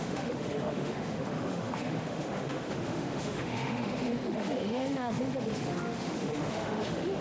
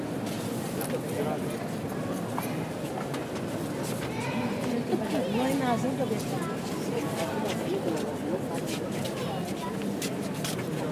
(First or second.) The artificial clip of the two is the first